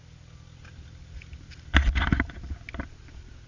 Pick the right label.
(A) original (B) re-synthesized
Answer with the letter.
A